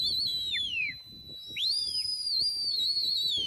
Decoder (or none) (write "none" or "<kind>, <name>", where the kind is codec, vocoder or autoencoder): none